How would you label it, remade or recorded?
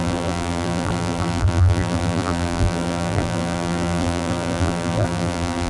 remade